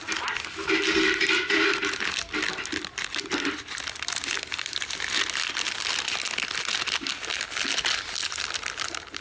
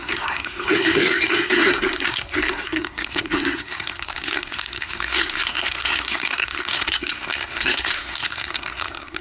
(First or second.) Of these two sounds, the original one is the first